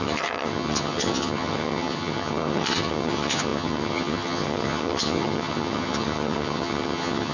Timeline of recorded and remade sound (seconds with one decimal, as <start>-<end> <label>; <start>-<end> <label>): 0.0-7.3 remade